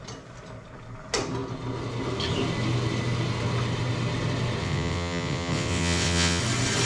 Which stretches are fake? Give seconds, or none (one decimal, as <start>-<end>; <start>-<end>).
4.6-6.4